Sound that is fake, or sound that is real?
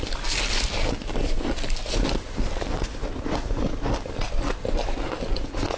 real